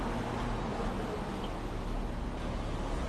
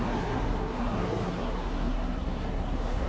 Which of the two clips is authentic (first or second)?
first